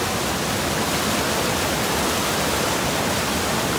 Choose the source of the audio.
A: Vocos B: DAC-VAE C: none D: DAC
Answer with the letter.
C